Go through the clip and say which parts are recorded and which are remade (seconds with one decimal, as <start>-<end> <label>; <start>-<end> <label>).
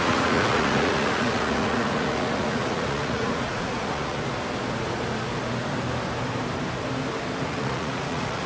0.0-4.2 remade; 4.2-7.5 recorded; 7.5-8.5 remade